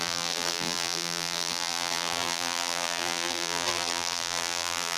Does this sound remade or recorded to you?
remade